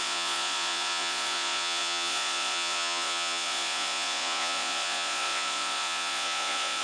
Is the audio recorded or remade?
remade